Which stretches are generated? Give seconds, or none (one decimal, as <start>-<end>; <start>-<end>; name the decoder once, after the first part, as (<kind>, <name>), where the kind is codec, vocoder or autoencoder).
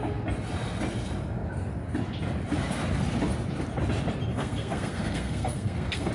4.3-6.1 (codec, SNAC)